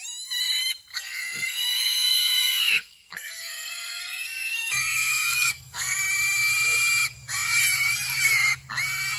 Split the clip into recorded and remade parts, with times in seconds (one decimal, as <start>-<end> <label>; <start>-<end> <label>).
0.0-0.9 recorded; 0.9-6.0 remade; 6.0-9.2 recorded

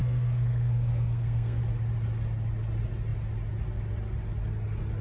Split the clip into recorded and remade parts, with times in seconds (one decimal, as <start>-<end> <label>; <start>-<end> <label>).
0.0-1.6 remade; 1.6-5.0 recorded